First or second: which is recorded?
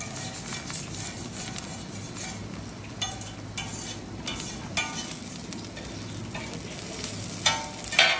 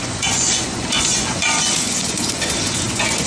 first